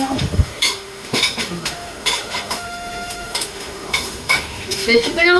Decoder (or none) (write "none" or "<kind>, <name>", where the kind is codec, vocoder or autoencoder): autoencoder, DAC-VAE